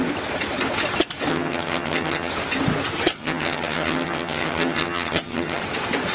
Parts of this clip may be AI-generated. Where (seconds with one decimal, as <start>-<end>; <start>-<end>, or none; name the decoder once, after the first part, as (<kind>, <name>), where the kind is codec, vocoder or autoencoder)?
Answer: 1.3-2.3 (vocoder, HiFi-GAN); 3.1-5.6